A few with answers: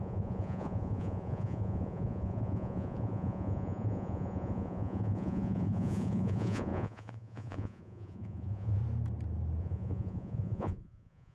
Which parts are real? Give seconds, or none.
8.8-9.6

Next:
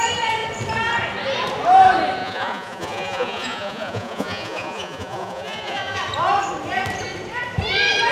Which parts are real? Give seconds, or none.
0.0-2.2; 6.0-8.1